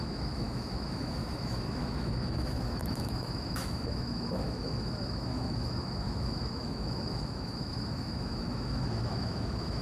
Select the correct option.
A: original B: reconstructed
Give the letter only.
B